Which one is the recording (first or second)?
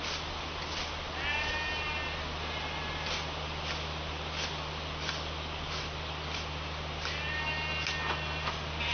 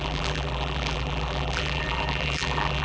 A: first